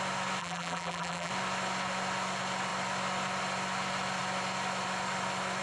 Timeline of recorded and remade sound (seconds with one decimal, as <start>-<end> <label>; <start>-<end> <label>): 0.0-0.4 recorded; 0.4-1.3 remade; 1.3-5.6 recorded